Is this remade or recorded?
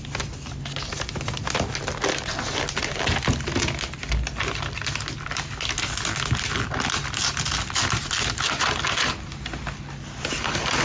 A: recorded